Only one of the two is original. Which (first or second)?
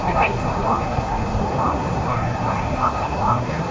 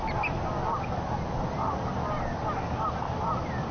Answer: second